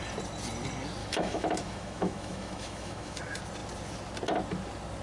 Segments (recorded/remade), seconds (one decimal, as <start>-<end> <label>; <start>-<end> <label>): 0.0-1.0 recorded; 1.0-3.2 remade; 3.2-5.0 recorded